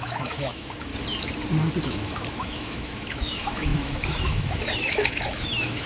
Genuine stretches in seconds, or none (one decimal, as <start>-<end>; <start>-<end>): 0.9-1.8